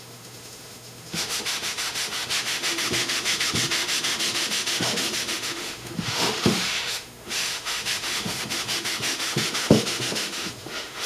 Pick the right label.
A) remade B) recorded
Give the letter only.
A